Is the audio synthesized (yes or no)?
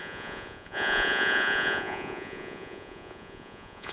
yes